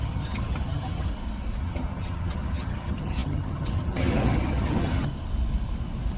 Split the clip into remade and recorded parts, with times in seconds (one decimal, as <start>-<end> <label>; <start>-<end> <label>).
0.0-1.1 remade; 1.1-1.6 recorded; 1.6-5.1 remade; 5.1-6.2 recorded